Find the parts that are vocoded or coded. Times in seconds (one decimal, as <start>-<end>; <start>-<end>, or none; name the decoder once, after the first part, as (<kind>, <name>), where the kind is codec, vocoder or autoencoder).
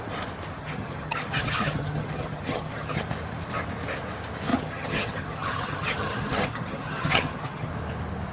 0.6-3.0 (vocoder, HiFi-GAN); 4.5-7.7